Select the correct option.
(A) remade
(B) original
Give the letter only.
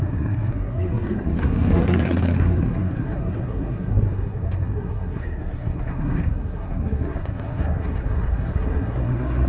A